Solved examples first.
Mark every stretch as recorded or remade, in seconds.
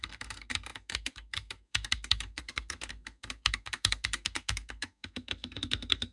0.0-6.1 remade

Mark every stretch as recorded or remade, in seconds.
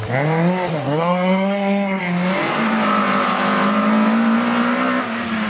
0.0-0.7 recorded; 0.7-2.0 remade; 2.0-5.5 recorded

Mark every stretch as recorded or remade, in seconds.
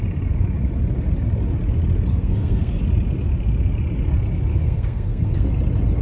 0.0-2.1 recorded; 2.1-2.8 remade; 2.8-4.5 recorded; 4.5-5.5 remade; 5.5-6.0 recorded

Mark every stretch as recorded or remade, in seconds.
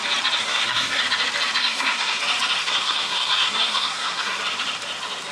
0.0-0.4 recorded; 0.4-1.0 remade; 1.0-1.6 recorded; 1.6-2.2 remade; 2.2-2.6 recorded; 2.6-4.4 remade; 4.4-5.3 recorded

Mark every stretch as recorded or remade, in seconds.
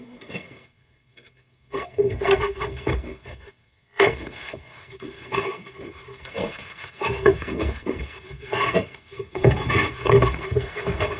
0.0-11.2 remade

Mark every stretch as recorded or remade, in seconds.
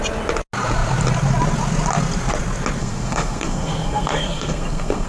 0.0-2.8 recorded; 2.8-5.1 remade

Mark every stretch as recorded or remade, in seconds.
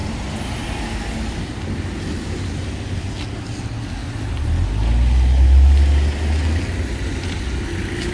0.0-8.1 recorded